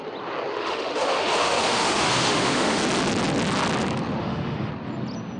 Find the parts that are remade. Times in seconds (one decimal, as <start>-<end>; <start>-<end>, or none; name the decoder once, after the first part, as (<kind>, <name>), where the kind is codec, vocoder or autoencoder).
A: 0.5-2.8 (autoencoder, DAC-VAE); 4.2-4.7